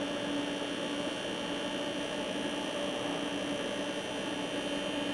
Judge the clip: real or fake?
real